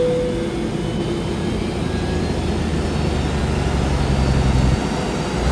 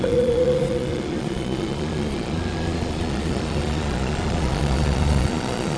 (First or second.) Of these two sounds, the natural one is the first